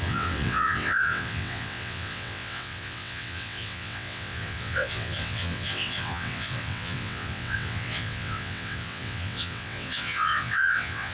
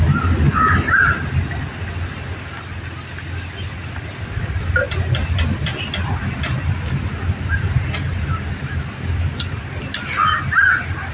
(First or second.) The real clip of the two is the second